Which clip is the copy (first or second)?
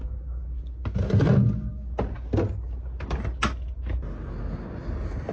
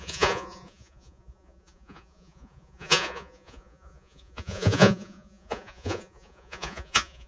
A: second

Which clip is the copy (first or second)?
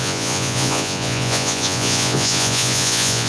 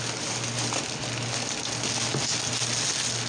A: first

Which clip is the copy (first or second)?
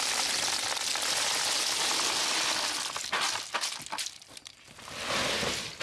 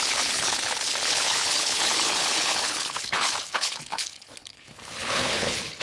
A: second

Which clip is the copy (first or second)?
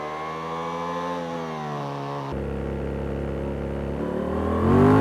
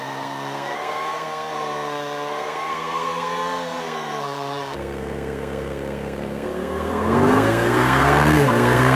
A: second